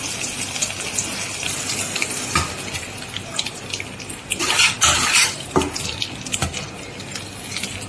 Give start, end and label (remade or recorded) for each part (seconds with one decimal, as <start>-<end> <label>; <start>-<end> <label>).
0.0-7.9 recorded